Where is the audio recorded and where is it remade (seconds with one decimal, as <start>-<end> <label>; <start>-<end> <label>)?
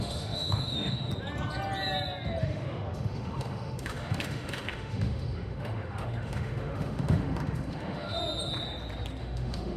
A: 0.0-1.1 remade; 1.1-2.4 recorded; 2.4-8.2 remade; 8.2-9.2 recorded; 9.2-9.8 remade